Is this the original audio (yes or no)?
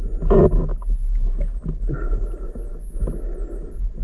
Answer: yes